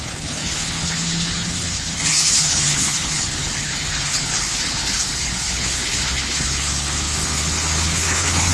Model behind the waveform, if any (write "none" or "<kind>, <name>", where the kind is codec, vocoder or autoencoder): codec, HILCodec